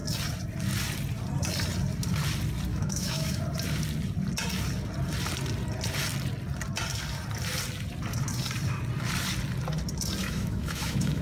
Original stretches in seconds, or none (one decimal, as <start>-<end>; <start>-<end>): 0.0-2.7; 3.4-10.2